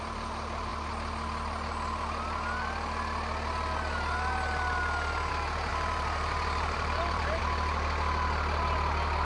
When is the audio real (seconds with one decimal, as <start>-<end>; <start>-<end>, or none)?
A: 0.0-5.7; 7.4-9.2